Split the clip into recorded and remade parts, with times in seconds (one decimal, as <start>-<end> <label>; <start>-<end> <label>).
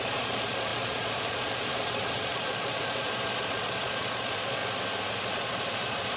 0.0-4.6 remade; 4.6-5.3 recorded; 5.3-6.2 remade